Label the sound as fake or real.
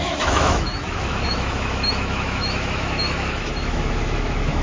fake